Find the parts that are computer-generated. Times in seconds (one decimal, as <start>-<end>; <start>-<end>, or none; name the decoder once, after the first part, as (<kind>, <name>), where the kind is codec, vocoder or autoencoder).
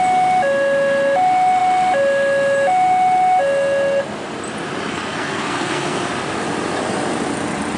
4.9-6.1 (codec, SNAC)